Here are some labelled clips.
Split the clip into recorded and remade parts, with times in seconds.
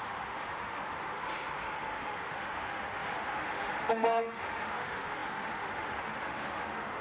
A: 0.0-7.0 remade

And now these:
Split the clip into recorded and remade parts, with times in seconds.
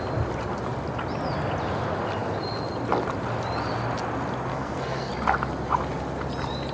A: 0.0-4.5 recorded; 4.5-5.1 remade; 5.1-6.7 recorded